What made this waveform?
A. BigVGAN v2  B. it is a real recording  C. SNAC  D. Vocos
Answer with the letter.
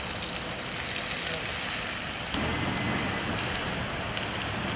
B